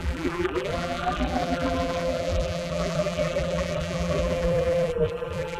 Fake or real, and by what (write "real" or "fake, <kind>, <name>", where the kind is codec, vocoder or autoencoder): fake, vocoder, BigVGAN v2